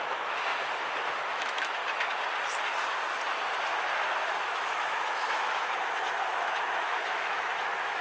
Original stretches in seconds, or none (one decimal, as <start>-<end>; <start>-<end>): 0.5-1.3; 1.8-4.3